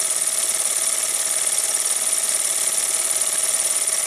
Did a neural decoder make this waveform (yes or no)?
no